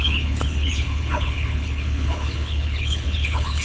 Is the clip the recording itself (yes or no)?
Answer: no